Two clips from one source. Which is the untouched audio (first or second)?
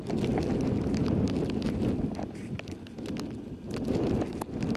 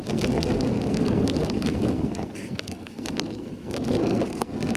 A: first